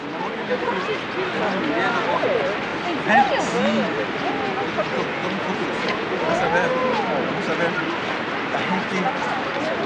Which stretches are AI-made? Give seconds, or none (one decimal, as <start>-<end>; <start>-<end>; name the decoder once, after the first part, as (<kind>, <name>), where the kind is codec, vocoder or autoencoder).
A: 5.2-6.1 (vocoder, Vocos)